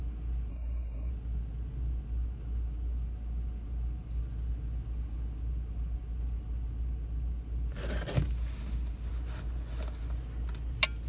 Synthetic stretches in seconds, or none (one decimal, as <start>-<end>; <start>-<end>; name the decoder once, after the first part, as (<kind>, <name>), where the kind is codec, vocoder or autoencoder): 0.5-1.1 (codec, SNAC)